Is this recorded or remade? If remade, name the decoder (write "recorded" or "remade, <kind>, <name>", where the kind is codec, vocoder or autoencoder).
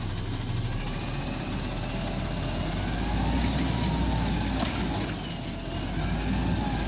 recorded